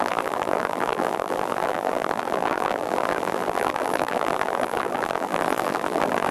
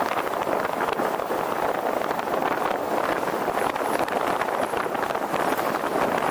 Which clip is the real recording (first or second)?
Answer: second